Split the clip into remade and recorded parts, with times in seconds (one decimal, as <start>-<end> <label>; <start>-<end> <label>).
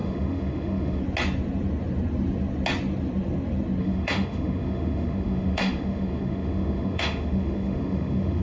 0.0-1.0 remade; 1.0-3.8 recorded; 3.8-8.4 remade